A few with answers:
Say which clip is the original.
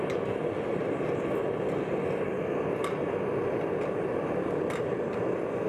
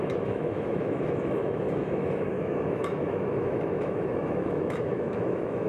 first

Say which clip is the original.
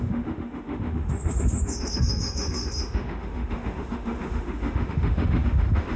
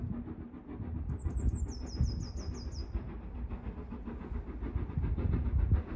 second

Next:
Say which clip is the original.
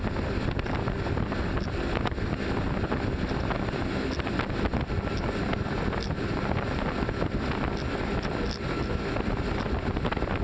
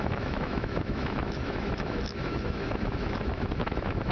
first